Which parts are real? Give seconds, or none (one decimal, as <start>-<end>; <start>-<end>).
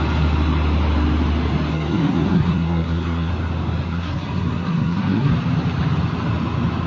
0.0-1.7; 3.3-3.9; 5.3-6.9